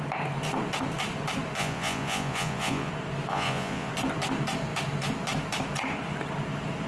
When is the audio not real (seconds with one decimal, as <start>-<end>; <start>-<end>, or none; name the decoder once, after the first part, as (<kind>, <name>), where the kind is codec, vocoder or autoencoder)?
1.6-2.9 (vocoder, Vocos); 3.3-3.9